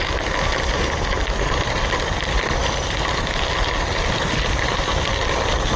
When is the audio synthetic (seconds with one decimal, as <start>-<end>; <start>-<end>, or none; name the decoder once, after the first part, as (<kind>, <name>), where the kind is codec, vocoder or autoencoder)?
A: 0.0-2.6 (vocoder, BigVGAN v2); 4.0-5.8